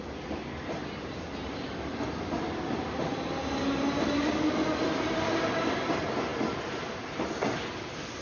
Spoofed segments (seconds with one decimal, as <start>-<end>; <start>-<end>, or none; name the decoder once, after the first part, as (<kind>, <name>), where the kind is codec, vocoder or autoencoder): none